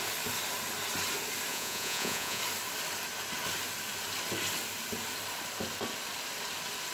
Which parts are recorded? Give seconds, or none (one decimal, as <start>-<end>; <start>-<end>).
0.0-1.5; 2.4-6.9